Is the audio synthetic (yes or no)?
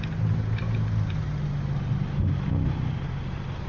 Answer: no